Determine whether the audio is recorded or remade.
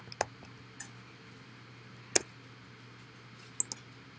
recorded